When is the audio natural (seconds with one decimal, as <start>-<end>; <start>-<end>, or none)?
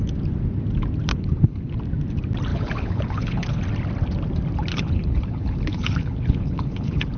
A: 0.0-1.1; 1.7-2.5; 3.6-4.7